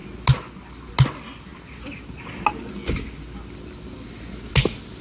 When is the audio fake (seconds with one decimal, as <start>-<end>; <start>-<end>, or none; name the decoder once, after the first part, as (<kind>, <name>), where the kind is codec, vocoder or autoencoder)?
none